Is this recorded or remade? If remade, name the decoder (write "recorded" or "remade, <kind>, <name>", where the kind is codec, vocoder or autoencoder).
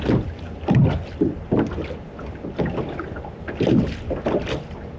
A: recorded